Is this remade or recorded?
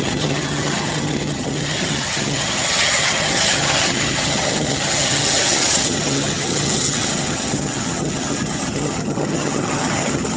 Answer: remade